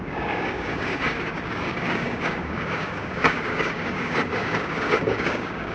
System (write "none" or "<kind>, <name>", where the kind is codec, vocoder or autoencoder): codec, DAC